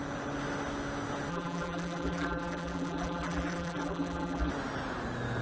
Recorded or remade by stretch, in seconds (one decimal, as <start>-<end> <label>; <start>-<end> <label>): 0.0-1.3 recorded; 1.3-4.5 remade; 4.5-5.4 recorded